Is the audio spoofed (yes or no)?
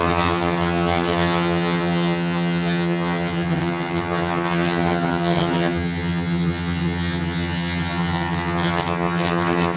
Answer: yes